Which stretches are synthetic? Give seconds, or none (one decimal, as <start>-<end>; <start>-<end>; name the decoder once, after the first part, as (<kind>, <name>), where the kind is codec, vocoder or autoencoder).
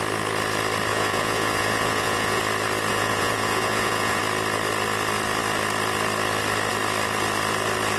0.9-2.4 (vocoder, Vocos); 2.9-4.2